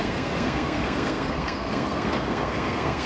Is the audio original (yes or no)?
no